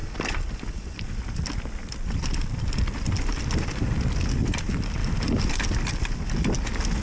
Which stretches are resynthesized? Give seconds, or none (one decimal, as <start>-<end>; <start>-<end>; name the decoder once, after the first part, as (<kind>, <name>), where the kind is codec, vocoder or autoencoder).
none